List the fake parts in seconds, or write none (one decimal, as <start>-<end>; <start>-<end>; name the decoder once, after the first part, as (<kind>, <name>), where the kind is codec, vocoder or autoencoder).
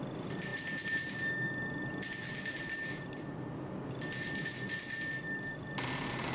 none